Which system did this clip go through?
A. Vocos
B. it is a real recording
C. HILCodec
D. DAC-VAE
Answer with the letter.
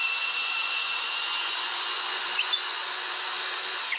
A